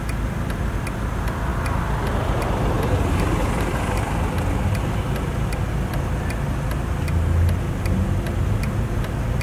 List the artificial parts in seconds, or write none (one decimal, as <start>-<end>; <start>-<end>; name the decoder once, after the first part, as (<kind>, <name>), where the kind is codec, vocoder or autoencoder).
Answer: none